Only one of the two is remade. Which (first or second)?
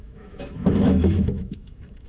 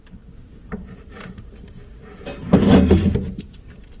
first